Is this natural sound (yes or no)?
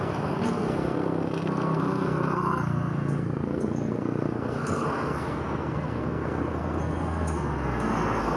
no